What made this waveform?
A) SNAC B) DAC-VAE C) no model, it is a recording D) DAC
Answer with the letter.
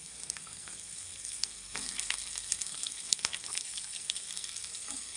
A